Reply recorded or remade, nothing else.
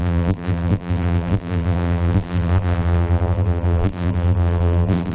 remade